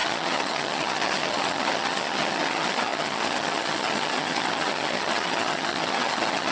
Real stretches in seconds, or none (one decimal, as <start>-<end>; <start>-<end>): none